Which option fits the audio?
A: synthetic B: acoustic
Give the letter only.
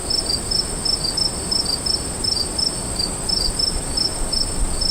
B